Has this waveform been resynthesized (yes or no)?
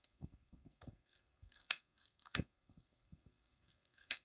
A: yes